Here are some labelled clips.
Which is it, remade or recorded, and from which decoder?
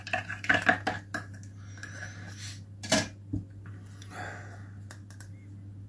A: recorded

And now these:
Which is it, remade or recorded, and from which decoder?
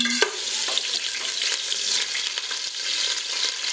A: recorded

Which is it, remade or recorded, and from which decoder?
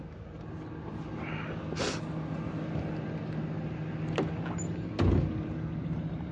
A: recorded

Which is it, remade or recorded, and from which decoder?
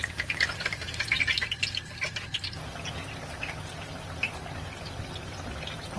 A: recorded